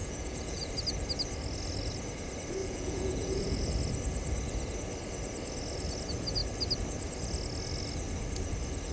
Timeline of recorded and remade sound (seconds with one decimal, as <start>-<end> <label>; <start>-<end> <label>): 0.0-0.7 remade; 0.7-2.6 recorded; 2.6-3.7 remade; 3.7-8.9 recorded